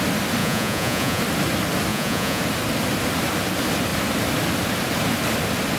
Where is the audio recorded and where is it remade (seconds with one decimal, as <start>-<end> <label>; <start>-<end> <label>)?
0.0-0.4 recorded; 0.4-1.2 remade; 1.2-1.9 recorded; 1.9-2.4 remade; 2.4-5.8 recorded